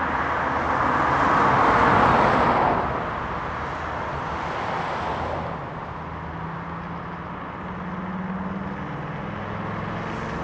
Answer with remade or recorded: recorded